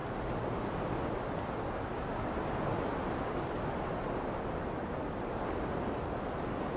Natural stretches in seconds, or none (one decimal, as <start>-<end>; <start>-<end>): 0.0-6.8